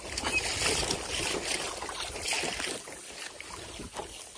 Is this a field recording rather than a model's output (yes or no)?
yes